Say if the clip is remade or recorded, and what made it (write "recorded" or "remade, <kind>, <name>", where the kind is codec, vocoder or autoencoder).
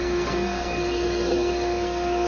remade, codec, SNAC